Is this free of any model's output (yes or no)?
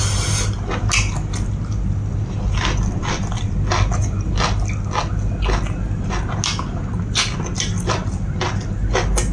yes